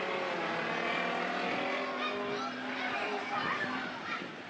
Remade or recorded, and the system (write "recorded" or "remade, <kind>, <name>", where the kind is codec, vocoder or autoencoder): recorded